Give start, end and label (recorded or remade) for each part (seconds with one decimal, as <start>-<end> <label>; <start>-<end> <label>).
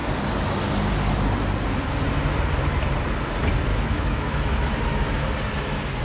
0.0-3.7 recorded; 3.7-4.7 remade; 4.7-6.0 recorded